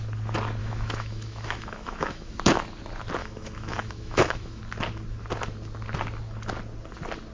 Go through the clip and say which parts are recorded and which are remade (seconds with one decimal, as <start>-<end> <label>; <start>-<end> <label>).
0.0-0.6 recorded; 0.6-2.4 remade; 2.4-3.2 recorded; 3.2-4.6 remade; 4.6-7.3 recorded